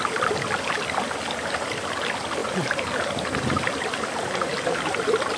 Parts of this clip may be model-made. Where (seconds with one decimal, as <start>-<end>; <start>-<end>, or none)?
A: 2.4-4.9

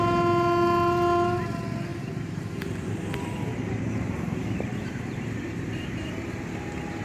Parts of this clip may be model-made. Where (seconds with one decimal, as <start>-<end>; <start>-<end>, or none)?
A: 1.9-6.1

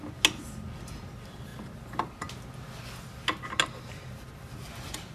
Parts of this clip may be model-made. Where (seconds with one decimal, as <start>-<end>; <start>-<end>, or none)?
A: none